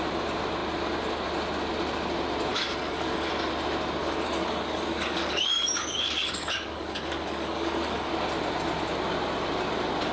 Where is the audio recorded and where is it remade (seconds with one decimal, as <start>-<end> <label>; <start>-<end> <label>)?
0.0-2.5 recorded; 2.5-3.3 remade; 3.3-4.0 recorded; 4.0-8.1 remade; 8.1-10.1 recorded